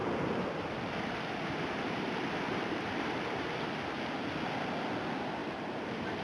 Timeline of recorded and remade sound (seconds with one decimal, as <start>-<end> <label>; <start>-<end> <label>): 0.0-3.7 remade; 3.7-5.4 recorded; 5.4-6.2 remade